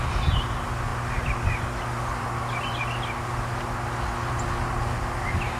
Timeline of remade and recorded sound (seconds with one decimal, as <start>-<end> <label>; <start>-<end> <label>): 0.0-5.6 recorded